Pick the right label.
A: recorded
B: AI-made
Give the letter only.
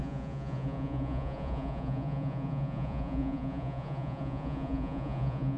B